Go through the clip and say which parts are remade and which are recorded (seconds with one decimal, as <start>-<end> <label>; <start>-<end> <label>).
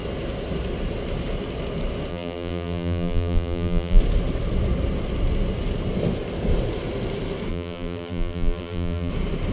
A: 0.0-2.1 recorded; 2.1-4.0 remade; 4.0-7.5 recorded; 7.5-9.1 remade; 9.1-9.5 recorded